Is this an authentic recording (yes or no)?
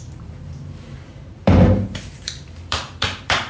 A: no